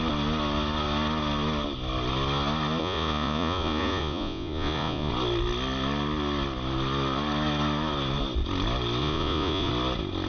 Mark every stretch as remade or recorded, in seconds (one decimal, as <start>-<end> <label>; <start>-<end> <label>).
0.0-2.8 recorded; 2.8-5.1 remade; 5.1-9.0 recorded; 9.0-9.7 remade; 9.7-10.3 recorded